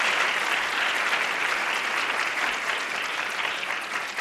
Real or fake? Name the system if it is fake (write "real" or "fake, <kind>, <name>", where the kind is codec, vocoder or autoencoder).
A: real